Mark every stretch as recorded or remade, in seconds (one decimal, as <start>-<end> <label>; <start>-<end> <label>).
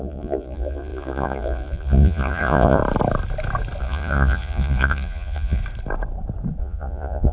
0.0-2.8 remade; 2.8-3.8 recorded; 3.8-5.6 remade; 5.6-6.6 recorded; 6.6-7.3 remade